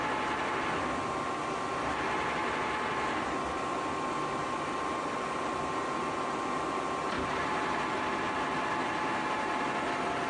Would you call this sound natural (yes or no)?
yes